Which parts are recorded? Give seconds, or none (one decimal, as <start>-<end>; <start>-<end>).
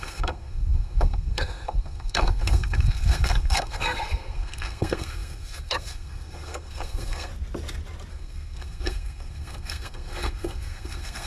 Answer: 7.3-8.1